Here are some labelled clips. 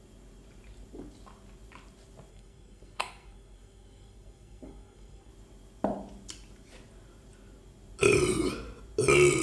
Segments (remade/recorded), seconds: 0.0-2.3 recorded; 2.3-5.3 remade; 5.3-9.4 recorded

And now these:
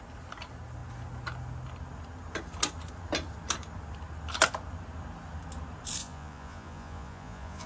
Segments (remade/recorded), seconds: 0.0-6.0 recorded; 6.0-7.7 remade

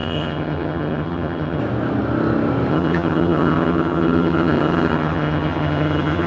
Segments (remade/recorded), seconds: 0.0-1.6 remade; 1.6-2.7 recorded; 2.7-6.3 remade